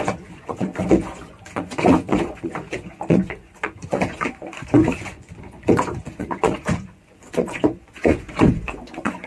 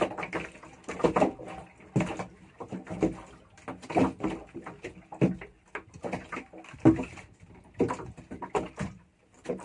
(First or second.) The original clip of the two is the second